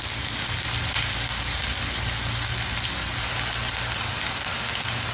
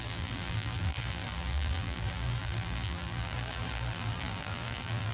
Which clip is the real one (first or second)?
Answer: first